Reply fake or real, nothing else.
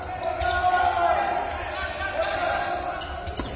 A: real